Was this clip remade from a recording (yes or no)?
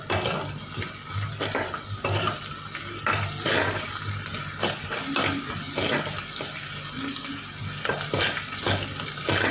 no